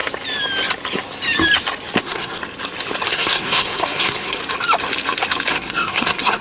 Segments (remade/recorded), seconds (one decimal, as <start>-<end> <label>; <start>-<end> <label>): 0.0-2.0 recorded; 2.0-2.4 remade; 2.4-3.1 recorded; 3.1-4.4 remade; 4.4-5.5 recorded; 5.5-6.4 remade